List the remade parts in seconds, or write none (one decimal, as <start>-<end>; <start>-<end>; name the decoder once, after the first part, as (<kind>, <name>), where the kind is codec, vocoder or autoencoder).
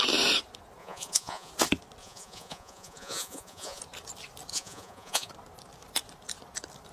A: 0.8-1.5 (vocoder, Vocos); 2.0-3.8; 4.5-5.3